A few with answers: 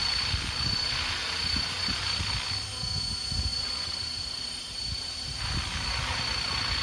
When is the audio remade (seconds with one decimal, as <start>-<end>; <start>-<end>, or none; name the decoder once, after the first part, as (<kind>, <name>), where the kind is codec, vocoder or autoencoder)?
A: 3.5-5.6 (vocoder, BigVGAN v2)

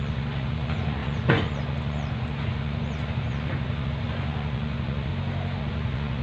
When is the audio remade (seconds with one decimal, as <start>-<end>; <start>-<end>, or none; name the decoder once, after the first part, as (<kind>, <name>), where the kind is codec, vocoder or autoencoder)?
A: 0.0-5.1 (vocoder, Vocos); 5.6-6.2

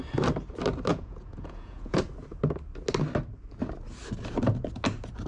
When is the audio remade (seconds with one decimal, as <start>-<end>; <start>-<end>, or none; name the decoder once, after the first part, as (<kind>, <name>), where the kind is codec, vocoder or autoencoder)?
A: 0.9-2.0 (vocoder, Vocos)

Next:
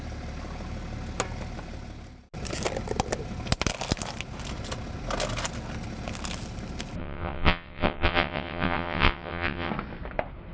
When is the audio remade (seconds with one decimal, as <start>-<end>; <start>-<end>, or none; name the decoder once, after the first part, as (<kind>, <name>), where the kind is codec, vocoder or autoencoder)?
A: 7.0-9.7 (vocoder, WaveNeXt)

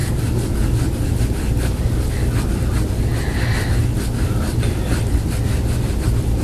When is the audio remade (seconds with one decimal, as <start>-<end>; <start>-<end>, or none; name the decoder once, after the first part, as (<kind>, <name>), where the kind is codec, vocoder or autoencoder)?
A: none